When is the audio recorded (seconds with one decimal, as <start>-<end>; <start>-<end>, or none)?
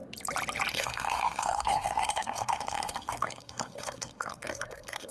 0.0-0.7